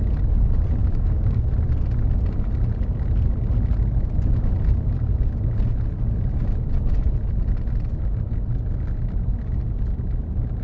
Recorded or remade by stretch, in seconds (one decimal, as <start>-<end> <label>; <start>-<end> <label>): 0.0-0.8 recorded; 0.8-1.5 remade; 1.5-10.6 recorded